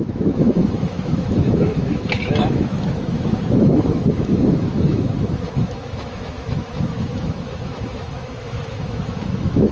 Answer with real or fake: fake